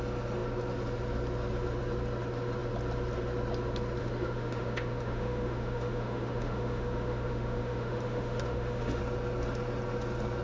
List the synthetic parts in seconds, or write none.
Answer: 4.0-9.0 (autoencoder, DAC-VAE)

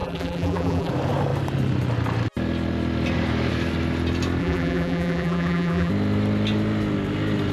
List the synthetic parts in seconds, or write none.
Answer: 0.0-0.9 (vocoder, BigVGAN v2); 4.4-5.9

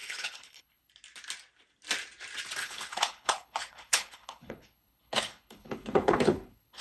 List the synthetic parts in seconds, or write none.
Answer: 0.0-0.9 (codec, HILCodec); 2.6-6.8

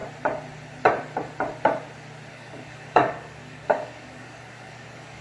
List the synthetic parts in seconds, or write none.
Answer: 2.3-5.2 (codec, DAC)